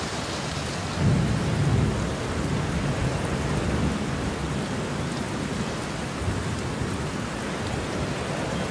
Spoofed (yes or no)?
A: no